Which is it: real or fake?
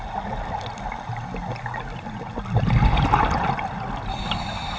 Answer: real